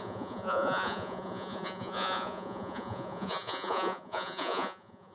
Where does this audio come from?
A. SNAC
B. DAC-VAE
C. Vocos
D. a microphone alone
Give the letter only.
C